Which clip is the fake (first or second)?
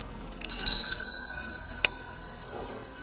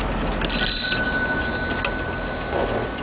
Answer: first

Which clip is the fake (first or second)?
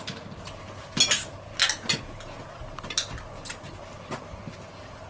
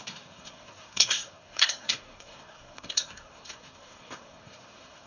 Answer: second